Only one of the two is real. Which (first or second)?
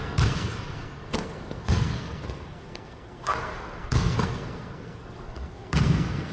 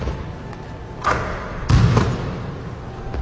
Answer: second